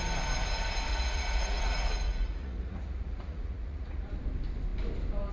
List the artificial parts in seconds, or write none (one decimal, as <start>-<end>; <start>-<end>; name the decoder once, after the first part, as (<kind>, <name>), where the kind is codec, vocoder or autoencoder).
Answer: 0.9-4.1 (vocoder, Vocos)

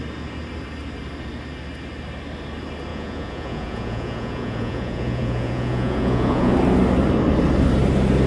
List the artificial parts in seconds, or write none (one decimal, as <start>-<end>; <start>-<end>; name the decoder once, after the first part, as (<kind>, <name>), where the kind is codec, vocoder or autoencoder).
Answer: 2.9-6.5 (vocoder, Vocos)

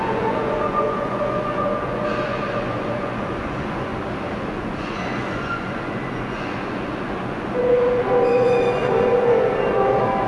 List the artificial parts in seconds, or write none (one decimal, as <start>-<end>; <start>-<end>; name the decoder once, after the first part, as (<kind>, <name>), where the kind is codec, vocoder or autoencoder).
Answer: 0.0-3.9 (vocoder, Vocos); 4.4-10.3

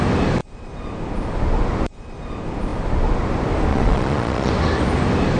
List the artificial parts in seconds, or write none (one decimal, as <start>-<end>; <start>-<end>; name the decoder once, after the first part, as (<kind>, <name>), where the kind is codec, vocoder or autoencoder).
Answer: 3.7-4.5 (vocoder, Vocos)

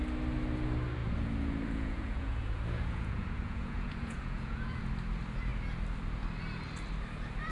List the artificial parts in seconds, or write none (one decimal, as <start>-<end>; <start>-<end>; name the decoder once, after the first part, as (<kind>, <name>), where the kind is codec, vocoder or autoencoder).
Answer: 1.0-4.8 (vocoder, Vocos)

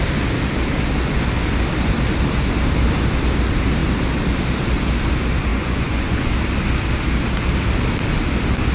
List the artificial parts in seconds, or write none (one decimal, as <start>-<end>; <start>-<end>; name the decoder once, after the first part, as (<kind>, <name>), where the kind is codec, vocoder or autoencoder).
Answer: 5.5-6.3 (vocoder, Vocos)